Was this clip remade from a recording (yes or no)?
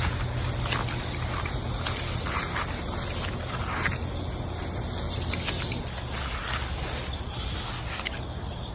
no